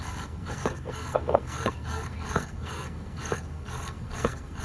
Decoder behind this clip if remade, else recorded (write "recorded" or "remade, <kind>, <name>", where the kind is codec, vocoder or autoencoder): remade, codec, SNAC